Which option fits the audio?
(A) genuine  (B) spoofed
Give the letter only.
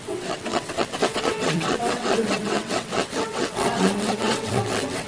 B